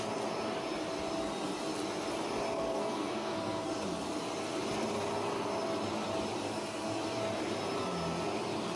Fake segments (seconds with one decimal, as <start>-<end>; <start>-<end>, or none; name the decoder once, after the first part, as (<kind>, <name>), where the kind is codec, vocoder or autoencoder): 2.5-3.7 (codec, SNAC)